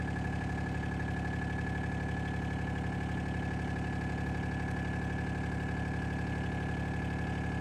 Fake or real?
real